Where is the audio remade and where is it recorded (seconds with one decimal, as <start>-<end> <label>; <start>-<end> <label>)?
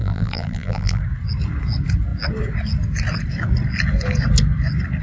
0.0-1.0 remade; 1.0-5.0 recorded